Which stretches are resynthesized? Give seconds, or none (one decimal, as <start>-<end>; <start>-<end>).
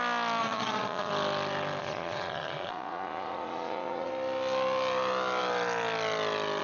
0.4-1.1; 1.8-4.1